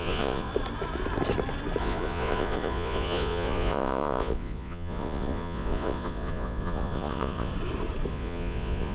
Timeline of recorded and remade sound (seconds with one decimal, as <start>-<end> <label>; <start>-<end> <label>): 0.0-0.5 remade; 0.5-1.8 recorded; 1.8-7.5 remade; 7.5-8.1 recorded; 8.1-8.9 remade